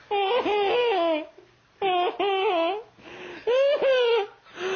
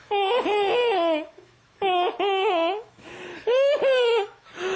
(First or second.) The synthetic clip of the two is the second